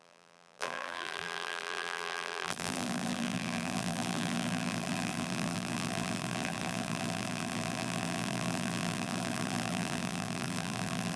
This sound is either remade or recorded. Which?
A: remade